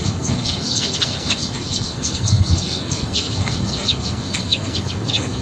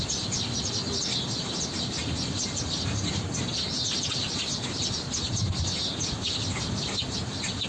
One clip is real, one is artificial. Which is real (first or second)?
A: second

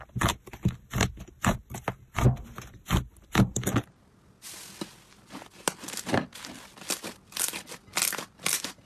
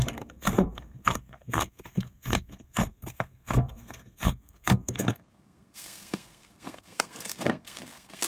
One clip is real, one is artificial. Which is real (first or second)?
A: first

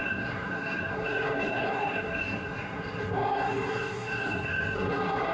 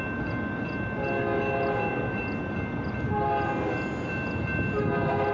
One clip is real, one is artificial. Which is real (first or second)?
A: second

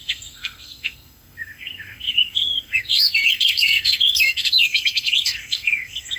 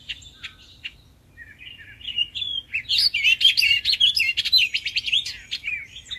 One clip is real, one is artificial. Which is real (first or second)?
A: second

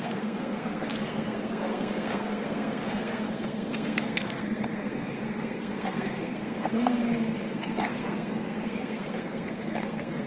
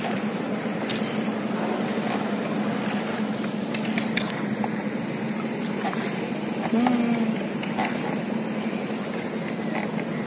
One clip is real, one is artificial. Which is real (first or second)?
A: second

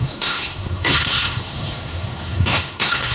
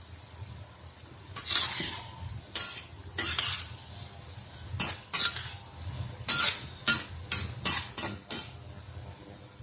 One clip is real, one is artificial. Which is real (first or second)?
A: second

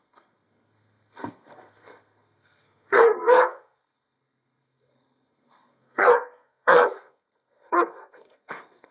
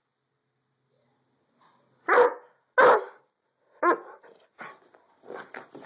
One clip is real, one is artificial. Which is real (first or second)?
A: second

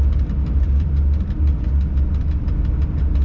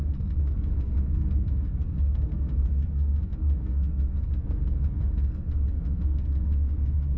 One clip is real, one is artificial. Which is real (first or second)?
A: first